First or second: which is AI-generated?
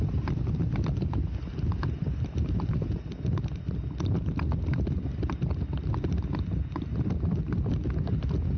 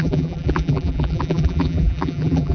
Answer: second